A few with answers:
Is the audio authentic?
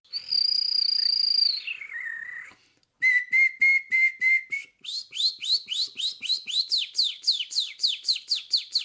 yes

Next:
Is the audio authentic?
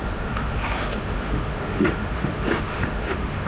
no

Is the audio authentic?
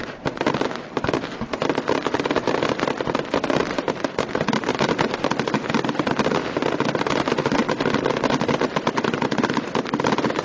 yes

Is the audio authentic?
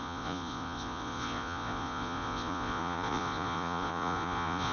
no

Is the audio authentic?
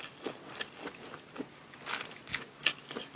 yes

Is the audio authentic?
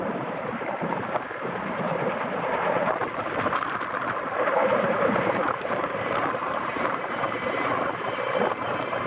no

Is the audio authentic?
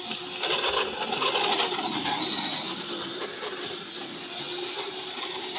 yes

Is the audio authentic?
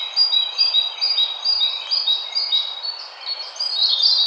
yes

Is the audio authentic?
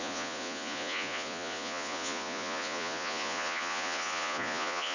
no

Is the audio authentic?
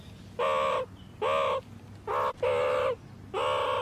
yes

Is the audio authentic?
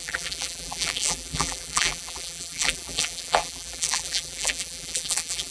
no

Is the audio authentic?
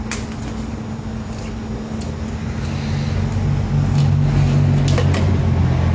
yes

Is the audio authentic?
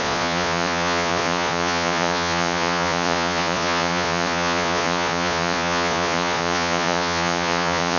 no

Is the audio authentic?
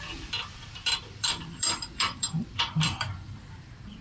no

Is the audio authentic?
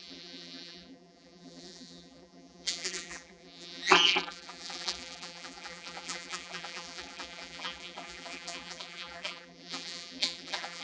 no